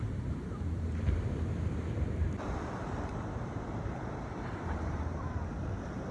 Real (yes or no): no